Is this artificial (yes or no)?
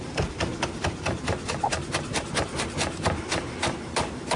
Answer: yes